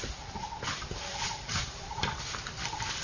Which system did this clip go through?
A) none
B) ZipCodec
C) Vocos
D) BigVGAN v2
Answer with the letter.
D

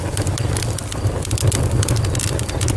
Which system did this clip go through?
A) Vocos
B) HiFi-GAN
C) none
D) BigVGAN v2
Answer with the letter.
C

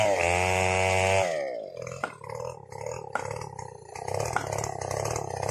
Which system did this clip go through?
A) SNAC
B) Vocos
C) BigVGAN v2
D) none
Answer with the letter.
D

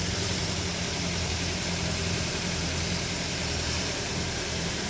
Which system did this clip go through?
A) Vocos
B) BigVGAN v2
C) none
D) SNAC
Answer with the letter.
B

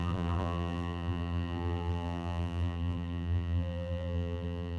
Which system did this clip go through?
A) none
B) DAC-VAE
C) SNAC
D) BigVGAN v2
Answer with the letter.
D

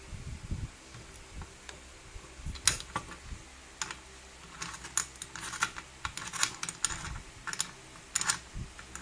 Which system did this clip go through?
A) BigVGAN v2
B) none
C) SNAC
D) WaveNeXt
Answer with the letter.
B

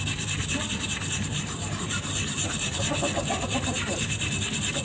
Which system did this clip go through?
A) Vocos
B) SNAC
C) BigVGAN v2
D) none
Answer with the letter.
C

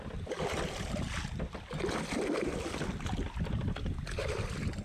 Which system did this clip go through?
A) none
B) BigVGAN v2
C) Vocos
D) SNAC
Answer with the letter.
A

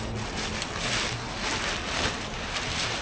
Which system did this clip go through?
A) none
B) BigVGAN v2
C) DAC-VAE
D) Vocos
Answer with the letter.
A